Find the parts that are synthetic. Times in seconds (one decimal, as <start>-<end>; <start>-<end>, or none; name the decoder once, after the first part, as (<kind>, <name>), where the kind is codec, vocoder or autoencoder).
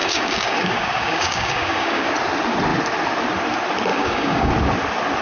0.0-2.1 (codec, DAC); 3.9-4.5